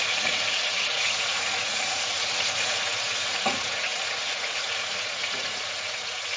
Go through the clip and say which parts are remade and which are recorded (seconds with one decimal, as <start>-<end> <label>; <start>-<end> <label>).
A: 0.0-6.4 remade